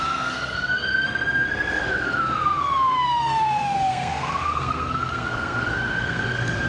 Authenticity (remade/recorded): remade